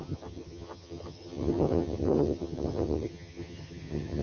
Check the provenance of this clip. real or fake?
fake